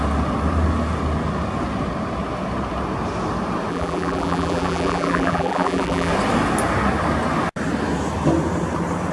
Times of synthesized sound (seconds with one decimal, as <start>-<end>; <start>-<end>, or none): 3.7-6.1